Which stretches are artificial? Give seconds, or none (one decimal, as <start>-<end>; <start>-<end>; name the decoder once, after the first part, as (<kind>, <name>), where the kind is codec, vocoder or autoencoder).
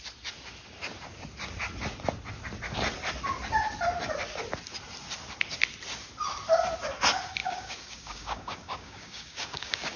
7.4-10.0 (codec, DAC)